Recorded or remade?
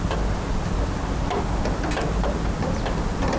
recorded